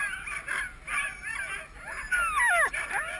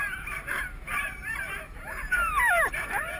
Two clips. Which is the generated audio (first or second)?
second